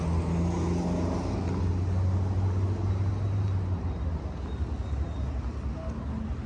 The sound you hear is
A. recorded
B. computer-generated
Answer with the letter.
A